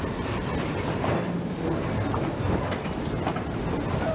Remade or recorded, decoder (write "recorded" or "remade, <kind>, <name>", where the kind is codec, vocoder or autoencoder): recorded